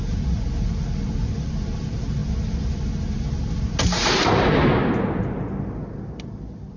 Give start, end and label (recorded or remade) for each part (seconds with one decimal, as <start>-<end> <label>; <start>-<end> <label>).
0.0-6.8 recorded